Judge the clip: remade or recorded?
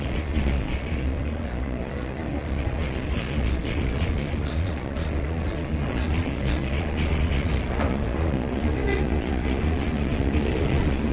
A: remade